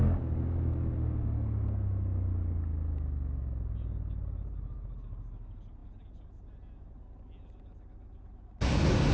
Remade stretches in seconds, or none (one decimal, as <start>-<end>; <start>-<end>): none